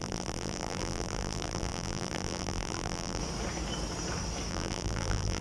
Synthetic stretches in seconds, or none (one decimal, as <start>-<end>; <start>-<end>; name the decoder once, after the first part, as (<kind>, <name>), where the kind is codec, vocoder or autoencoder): 0.0-3.2 (vocoder, BigVGAN v2); 4.5-5.4